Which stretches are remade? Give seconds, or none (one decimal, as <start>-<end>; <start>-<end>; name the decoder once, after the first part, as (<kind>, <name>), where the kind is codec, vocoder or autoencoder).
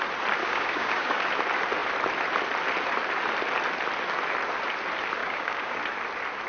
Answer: 0.4-1.2 (codec, DAC); 5.2-5.8